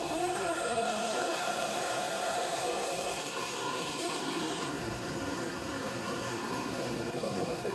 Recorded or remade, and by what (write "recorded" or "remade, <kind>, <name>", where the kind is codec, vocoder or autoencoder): remade, codec, SNAC